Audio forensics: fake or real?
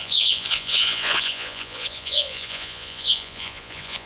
fake